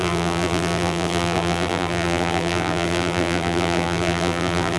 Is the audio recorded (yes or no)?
no